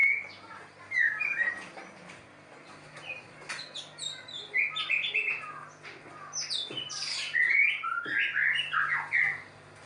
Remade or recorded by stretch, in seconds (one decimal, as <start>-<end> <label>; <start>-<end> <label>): 0.0-9.9 recorded